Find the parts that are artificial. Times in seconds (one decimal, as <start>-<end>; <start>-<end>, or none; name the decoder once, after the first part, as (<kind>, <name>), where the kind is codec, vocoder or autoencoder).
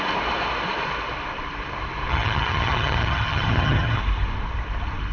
2.1-4.0 (vocoder, HiFi-GAN)